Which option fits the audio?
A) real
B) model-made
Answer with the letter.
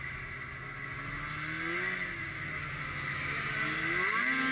A